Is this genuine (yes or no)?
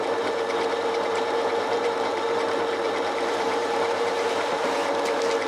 no